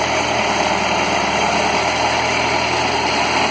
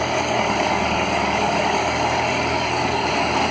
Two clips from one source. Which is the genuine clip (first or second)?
first